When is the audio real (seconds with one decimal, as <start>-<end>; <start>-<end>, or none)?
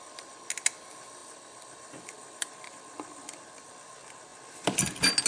0.0-1.2; 3.7-5.3